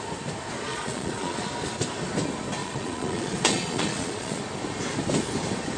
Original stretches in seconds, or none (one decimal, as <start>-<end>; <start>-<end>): 0.0-0.7; 1.5-2.6; 4.4-5.8

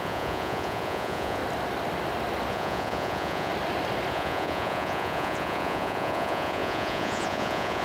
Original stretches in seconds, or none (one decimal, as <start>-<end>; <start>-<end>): 1.4-2.5; 3.5-4.1

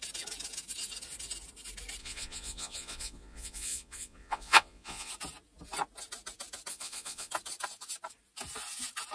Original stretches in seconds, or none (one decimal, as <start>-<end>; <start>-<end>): 0.0-2.0; 5.1-6.7; 7.3-9.1